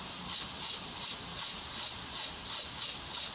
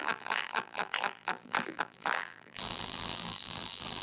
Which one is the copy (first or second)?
second